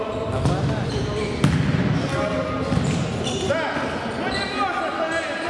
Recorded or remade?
recorded